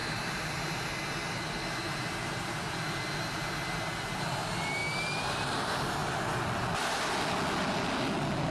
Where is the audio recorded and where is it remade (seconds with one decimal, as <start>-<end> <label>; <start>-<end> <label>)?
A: 0.0-0.9 remade; 0.9-8.5 recorded